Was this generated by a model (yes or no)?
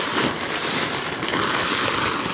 no